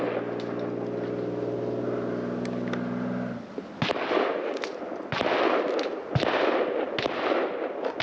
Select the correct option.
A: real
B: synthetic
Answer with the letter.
A